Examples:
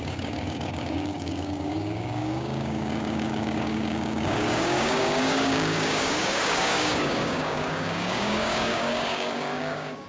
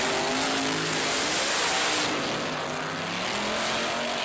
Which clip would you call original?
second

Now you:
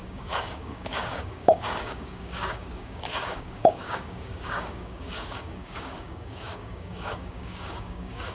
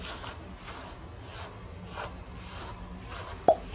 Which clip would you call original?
second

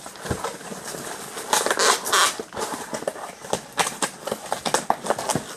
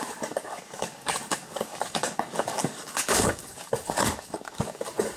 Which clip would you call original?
first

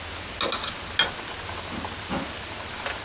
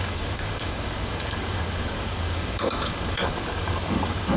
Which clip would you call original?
first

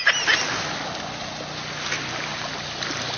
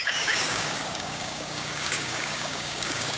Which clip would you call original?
first